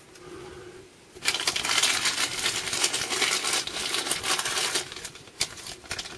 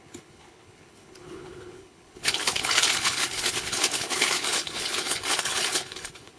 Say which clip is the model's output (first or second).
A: second